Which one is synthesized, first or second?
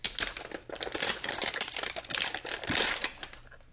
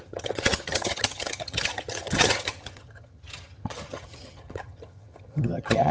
second